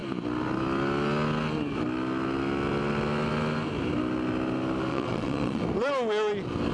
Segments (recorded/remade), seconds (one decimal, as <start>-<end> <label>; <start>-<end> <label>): 0.0-4.9 recorded; 4.9-5.6 remade; 5.6-6.7 recorded